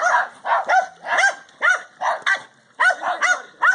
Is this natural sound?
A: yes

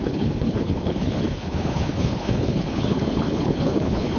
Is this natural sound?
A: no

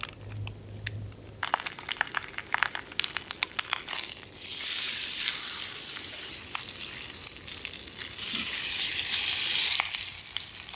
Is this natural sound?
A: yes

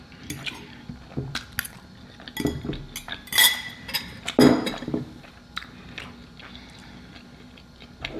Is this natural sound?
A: yes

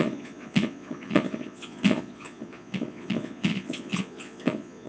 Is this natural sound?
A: no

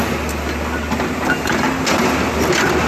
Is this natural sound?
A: yes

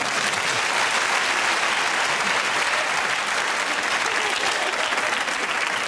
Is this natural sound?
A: yes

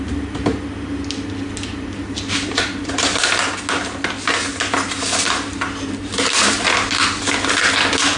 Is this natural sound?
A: yes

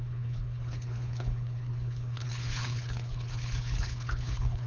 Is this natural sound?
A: no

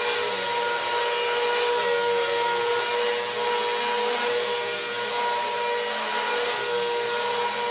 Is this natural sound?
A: yes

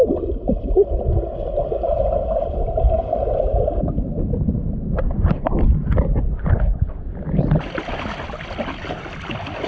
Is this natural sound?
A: yes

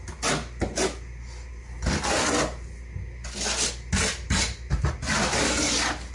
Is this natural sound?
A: yes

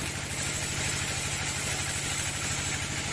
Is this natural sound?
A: yes